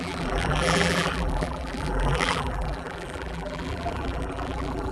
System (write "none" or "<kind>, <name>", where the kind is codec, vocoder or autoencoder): vocoder, BigVGAN v2